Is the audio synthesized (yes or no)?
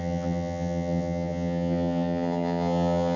yes